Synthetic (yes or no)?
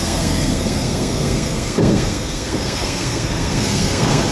yes